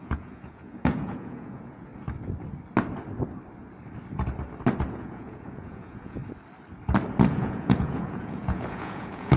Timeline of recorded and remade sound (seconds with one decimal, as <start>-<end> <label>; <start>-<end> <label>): 0.0-1.9 remade; 1.9-4.9 recorded; 4.9-6.2 remade; 6.2-7.3 recorded; 7.3-9.4 remade